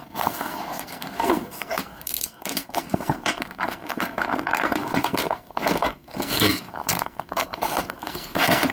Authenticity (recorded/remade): remade